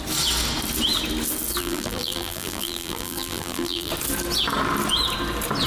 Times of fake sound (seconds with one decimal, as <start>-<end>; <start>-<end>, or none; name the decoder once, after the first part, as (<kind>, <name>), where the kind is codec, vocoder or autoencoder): 1.6-3.9 (vocoder, BigVGAN v2)